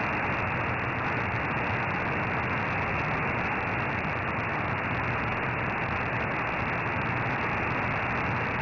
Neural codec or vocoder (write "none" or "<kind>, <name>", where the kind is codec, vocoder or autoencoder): none